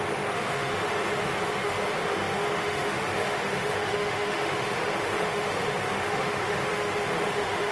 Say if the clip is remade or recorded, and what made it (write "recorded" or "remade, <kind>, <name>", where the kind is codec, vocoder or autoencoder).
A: remade, autoencoder, DAC-VAE